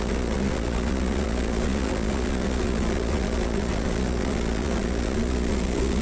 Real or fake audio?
fake